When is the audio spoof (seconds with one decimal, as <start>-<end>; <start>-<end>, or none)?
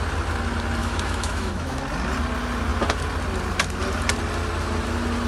0.8-1.8